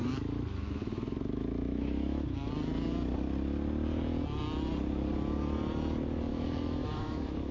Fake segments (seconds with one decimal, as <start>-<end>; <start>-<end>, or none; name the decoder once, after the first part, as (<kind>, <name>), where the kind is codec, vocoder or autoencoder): 0.0-2.5 (autoencoder, DAC-VAE); 6.3-7.5